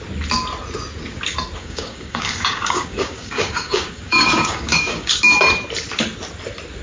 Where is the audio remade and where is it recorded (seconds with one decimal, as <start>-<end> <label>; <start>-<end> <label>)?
0.0-1.6 recorded; 1.6-5.2 remade; 5.2-6.8 recorded